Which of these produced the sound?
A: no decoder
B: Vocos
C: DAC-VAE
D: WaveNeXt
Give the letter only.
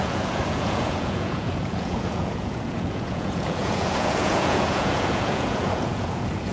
B